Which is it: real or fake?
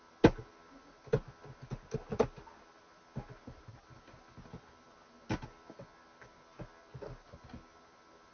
real